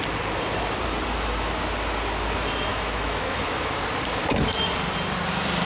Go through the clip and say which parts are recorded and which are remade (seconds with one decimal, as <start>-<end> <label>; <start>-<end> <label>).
0.0-2.7 recorded; 2.7-3.8 remade; 3.8-5.6 recorded